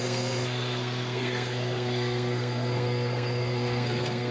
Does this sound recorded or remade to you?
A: remade